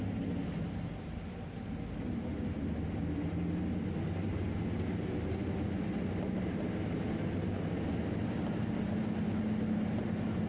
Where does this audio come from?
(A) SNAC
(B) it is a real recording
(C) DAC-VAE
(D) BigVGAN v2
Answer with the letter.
B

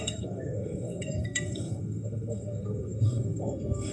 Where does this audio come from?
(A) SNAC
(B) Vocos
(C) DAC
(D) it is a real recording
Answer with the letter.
A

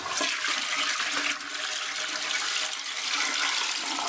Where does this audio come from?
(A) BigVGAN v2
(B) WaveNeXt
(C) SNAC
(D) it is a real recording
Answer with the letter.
D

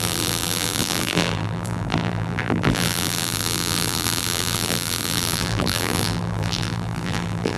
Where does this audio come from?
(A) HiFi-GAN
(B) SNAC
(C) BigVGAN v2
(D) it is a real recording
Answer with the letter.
C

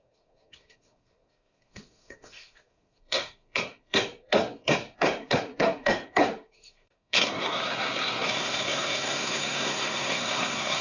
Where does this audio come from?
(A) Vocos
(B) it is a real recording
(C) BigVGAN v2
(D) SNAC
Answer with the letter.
D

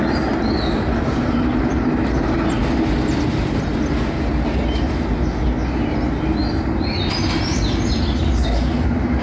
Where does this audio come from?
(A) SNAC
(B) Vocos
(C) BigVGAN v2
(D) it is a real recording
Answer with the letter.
D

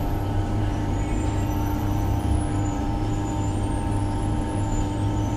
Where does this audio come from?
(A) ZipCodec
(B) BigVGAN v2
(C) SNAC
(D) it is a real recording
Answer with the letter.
B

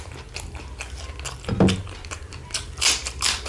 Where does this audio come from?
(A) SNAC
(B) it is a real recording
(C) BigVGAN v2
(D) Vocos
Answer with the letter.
B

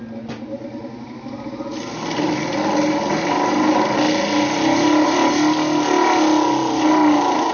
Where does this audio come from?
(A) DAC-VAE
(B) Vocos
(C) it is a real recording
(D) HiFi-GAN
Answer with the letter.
C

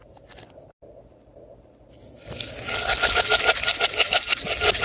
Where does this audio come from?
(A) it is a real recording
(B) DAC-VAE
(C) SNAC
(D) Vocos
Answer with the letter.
A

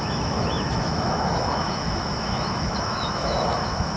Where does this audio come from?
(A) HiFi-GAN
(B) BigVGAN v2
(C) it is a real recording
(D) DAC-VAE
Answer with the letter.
D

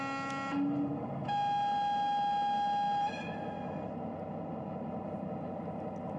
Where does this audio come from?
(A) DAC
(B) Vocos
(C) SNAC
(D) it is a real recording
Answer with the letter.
D